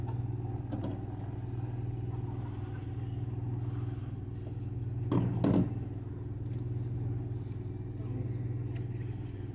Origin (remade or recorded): recorded